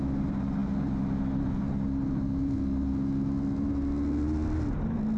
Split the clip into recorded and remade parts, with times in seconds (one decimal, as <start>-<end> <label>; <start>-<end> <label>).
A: 0.0-5.2 recorded